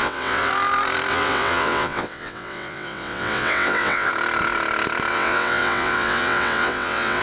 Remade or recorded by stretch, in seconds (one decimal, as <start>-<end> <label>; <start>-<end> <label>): 0.0-0.5 remade; 0.5-1.1 recorded; 1.1-4.1 remade; 4.1-5.1 recorded; 5.1-7.2 remade